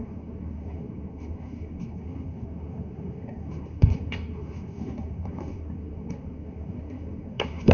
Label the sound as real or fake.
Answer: fake